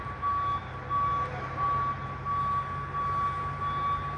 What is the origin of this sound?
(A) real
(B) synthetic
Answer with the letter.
A